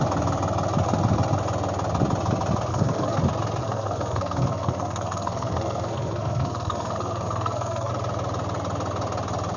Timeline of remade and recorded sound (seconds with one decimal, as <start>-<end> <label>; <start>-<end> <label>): 0.0-2.7 recorded; 2.7-3.2 remade; 3.2-3.6 recorded; 3.6-7.9 remade; 7.9-9.6 recorded